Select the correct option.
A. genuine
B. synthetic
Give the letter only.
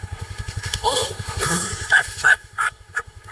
B